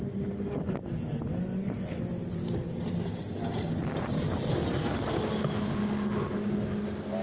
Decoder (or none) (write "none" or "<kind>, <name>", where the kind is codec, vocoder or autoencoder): none